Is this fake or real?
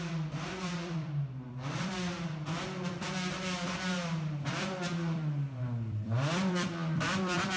fake